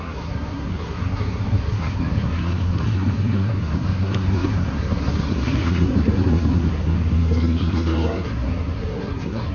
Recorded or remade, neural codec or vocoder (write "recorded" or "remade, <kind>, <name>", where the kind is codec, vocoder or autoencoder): remade, codec, SNAC